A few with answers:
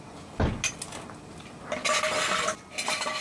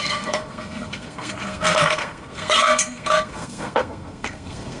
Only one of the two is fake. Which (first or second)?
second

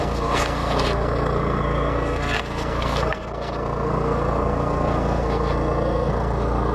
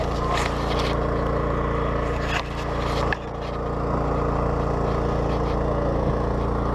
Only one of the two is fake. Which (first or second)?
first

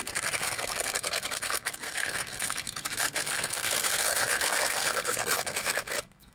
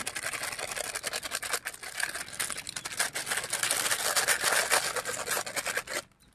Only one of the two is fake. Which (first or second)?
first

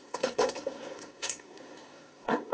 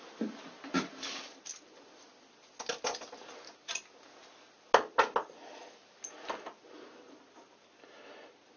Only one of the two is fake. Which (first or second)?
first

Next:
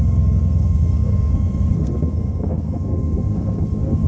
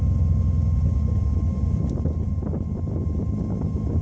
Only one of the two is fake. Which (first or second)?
first